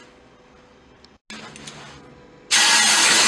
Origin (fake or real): real